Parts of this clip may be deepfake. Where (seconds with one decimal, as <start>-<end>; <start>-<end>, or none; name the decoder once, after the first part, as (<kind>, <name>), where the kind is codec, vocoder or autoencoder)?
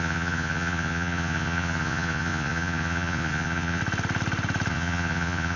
0.0-3.8 (vocoder, Vocos); 4.7-5.6